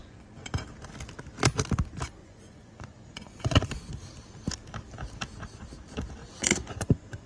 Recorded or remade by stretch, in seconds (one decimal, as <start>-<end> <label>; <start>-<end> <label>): 0.0-0.5 remade; 0.5-2.2 recorded; 2.2-3.7 remade; 3.7-6.2 recorded; 6.2-7.3 remade